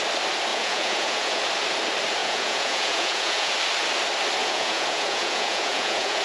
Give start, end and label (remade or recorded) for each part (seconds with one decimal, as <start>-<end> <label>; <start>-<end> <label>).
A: 0.0-0.5 recorded; 0.5-1.4 remade; 1.4-2.2 recorded; 2.2-3.5 remade; 3.5-4.4 recorded; 4.4-6.2 remade

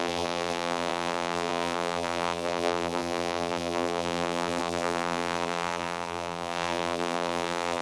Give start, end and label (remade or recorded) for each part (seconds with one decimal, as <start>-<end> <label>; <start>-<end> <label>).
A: 0.0-7.8 remade

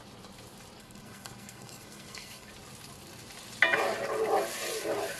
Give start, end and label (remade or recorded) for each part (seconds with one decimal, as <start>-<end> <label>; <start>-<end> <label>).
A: 0.0-0.8 recorded; 0.8-2.5 remade; 2.5-5.2 recorded

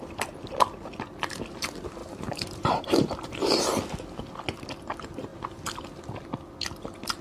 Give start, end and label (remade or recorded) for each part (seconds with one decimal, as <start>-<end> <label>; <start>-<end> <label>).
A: 0.0-2.0 recorded; 2.0-3.6 remade; 3.6-7.2 recorded

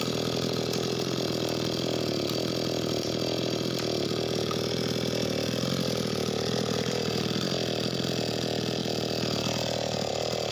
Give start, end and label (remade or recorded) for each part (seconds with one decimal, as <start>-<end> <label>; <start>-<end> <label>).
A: 0.0-10.5 recorded